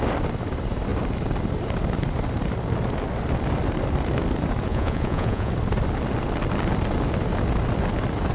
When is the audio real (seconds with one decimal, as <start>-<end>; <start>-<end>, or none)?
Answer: 0.0-4.7; 5.5-8.3